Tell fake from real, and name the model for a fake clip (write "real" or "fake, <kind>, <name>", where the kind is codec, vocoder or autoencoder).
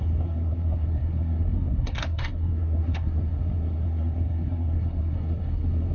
fake, codec, SNAC